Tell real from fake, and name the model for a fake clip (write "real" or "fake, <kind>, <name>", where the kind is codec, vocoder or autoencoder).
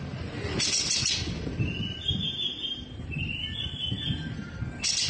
real